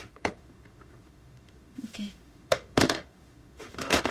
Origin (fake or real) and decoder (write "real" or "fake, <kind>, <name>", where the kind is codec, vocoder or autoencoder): fake, autoencoder, DAC-VAE